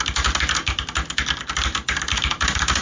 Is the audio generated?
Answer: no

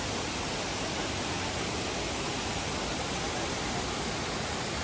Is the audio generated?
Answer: no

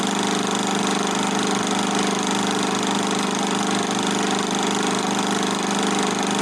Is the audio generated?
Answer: no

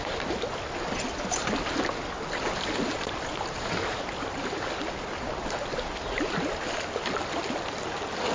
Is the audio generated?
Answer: no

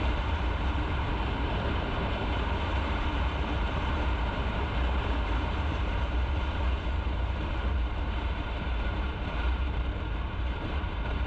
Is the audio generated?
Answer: yes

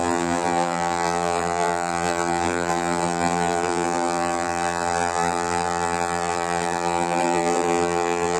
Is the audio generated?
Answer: yes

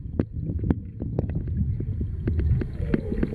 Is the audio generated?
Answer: no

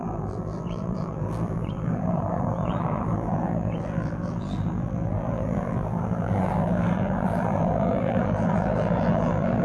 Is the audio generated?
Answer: yes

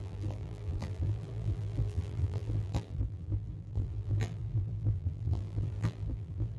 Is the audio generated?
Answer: yes